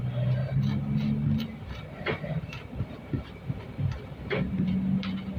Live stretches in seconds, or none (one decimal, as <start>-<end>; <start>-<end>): 0.0-1.5; 4.7-5.4